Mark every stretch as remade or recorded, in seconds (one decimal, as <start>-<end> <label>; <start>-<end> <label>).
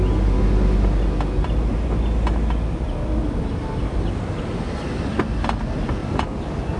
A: 0.0-3.2 recorded; 3.2-4.4 remade; 4.4-6.0 recorded; 6.0-6.8 remade